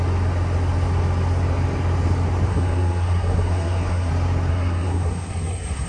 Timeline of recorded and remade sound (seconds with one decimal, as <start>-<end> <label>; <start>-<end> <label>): 0.0-2.5 recorded; 2.5-4.1 remade; 4.1-4.5 recorded; 4.5-5.9 remade